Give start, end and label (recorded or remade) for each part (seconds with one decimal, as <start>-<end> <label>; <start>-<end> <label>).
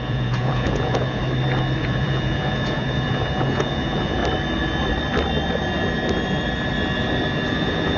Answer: 0.0-1.2 remade; 1.2-1.8 recorded; 1.8-4.2 remade; 4.2-7.5 recorded; 7.5-8.0 remade